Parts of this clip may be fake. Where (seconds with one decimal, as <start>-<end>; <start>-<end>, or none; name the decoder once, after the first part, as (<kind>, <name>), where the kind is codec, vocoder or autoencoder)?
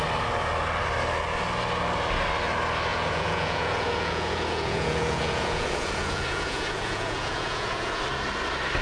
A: 2.9-8.0 (vocoder, Vocos)